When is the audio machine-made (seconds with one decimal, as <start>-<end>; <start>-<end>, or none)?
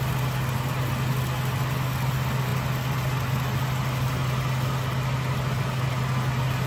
none